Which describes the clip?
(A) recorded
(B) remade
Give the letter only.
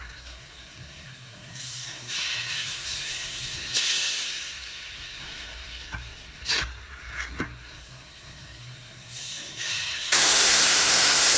B